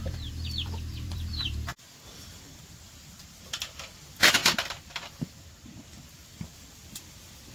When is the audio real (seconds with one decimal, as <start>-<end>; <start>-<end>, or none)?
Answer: 1.7-3.2